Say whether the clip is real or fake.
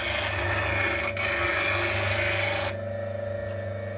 real